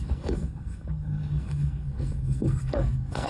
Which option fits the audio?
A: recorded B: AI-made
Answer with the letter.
B